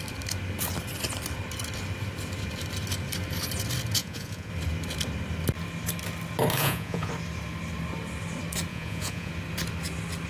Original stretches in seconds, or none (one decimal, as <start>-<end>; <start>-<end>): 0.0-4.0; 4.5-6.5; 7.1-8.7; 9.3-10.3

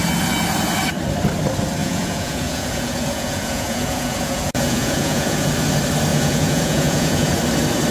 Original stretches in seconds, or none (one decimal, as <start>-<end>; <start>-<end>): 0.0-1.8; 5.5-6.1; 7.3-7.9

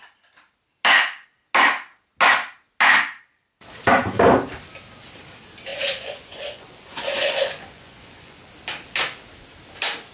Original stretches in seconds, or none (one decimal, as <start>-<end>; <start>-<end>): 0.0-5.7; 8.5-10.1

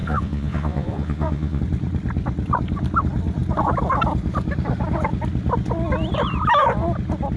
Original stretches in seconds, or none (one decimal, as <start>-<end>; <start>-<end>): 1.6-7.4

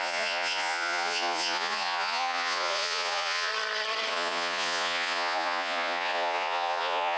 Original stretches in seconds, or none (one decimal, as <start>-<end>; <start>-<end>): 3.5-4.1

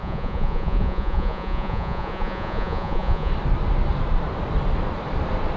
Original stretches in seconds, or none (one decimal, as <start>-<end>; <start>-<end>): 3.3-5.6

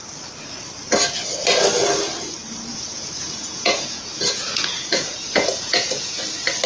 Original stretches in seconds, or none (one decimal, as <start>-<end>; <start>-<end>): 0.0-2.7; 6.2-6.7